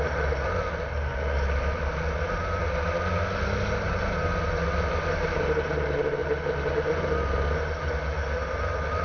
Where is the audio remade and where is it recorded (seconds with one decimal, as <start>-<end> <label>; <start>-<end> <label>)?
0.0-9.0 recorded